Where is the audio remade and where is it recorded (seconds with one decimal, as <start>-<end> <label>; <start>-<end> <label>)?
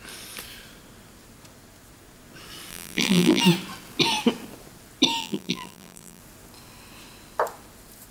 0.0-2.7 recorded; 2.7-3.4 remade; 3.4-5.2 recorded; 5.2-6.2 remade; 6.2-8.1 recorded